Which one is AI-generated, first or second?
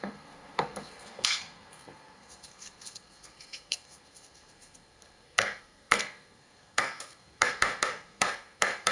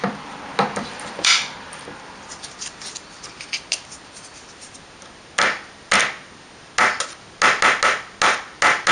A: first